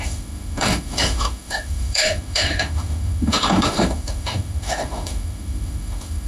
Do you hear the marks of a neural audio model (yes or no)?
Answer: yes